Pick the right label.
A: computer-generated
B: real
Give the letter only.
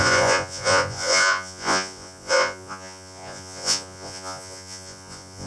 A